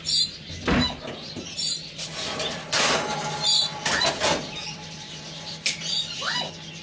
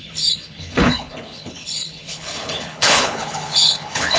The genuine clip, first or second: first